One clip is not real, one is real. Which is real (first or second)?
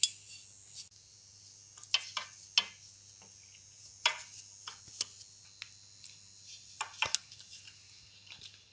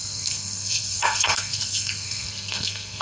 first